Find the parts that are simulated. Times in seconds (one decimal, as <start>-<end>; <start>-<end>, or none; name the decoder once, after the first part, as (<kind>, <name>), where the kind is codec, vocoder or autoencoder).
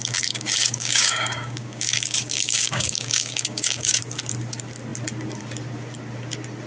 0.0-4.0 (codec, DAC)